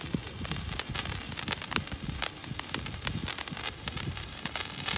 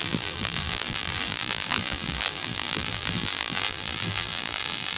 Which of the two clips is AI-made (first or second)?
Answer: second